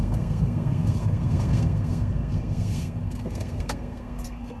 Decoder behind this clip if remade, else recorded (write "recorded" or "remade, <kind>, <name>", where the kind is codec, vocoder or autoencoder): remade, codec, SNAC